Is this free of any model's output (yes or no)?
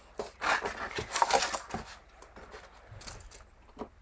yes